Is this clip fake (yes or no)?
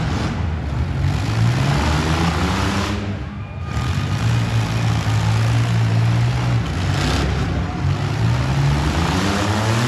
no